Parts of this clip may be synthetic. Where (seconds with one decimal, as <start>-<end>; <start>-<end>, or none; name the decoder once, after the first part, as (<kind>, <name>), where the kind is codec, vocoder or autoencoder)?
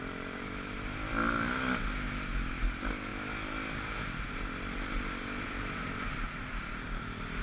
none